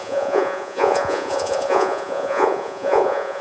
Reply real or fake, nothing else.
fake